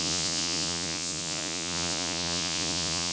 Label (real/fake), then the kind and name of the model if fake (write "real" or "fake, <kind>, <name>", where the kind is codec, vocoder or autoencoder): fake, vocoder, Vocos